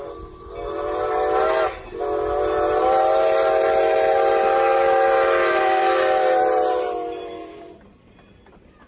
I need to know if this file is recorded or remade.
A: recorded